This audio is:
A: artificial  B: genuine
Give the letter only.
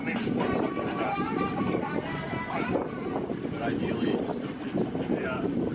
B